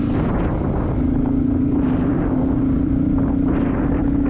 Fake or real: real